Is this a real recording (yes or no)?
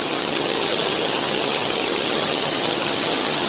no